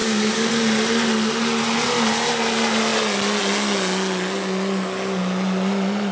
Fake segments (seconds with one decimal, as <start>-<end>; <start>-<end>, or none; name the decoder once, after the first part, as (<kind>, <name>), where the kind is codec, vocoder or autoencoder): 0.0-0.5 (codec, DAC)